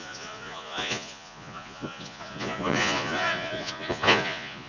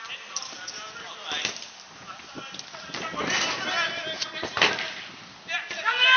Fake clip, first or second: first